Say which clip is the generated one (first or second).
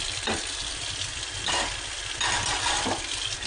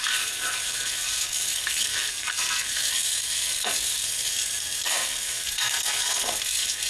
second